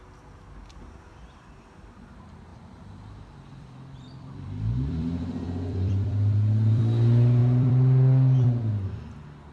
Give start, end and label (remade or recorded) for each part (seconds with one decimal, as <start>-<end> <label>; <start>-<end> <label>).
0.0-2.5 recorded; 2.5-6.8 remade; 6.8-7.4 recorded; 7.4-8.6 remade; 8.6-9.5 recorded